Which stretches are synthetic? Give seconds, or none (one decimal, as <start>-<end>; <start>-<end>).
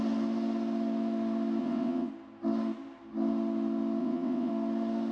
1.6-2.1; 4.0-4.5